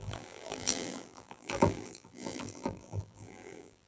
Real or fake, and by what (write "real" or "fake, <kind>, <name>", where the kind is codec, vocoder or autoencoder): fake, vocoder, BigVGAN v2